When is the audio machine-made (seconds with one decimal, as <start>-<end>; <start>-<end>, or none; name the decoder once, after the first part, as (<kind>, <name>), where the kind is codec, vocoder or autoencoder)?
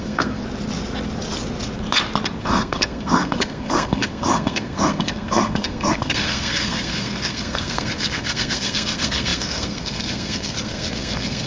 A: 0.0-0.4 (codec, SNAC); 2.4-11.5